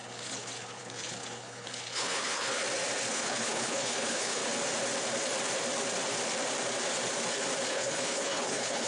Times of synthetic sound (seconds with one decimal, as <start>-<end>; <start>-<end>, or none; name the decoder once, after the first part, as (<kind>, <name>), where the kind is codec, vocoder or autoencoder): 0.0-2.6 (codec, HILCodec); 3.1-4.4; 7.7-8.9